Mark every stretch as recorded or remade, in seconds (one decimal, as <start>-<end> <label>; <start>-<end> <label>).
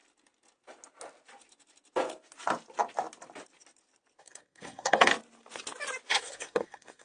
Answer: 0.0-4.2 recorded; 4.2-5.1 remade; 5.1-6.1 recorded; 6.1-7.0 remade